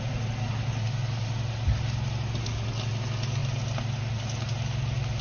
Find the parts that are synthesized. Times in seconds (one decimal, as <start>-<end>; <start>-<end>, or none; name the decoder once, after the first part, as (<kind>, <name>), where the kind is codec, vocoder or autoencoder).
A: none

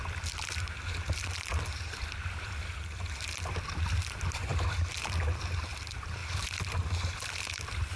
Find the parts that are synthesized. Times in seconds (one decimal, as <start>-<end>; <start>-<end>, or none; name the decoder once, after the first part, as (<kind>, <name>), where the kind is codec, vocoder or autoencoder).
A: none

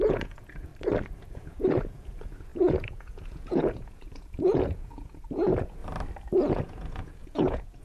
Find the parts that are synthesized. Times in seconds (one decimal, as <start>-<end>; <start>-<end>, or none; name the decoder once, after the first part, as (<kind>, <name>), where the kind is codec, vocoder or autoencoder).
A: 0.0-0.7 (vocoder, Vocos); 1.2-5.8; 6.5-7.8

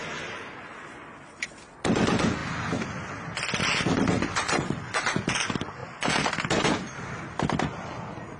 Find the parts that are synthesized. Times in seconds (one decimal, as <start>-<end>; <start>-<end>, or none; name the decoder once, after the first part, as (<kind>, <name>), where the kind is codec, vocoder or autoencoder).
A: none